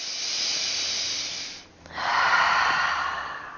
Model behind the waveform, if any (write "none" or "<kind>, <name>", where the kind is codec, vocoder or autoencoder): none